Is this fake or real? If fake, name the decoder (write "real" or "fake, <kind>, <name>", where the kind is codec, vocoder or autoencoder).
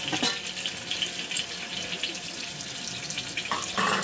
real